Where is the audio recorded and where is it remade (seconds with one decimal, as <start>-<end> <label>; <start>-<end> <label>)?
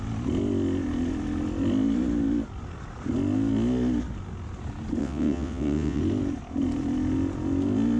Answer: 0.0-5.0 recorded; 5.0-6.0 remade; 6.0-8.0 recorded